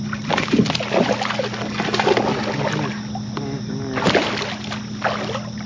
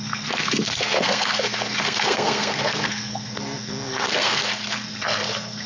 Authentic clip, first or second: first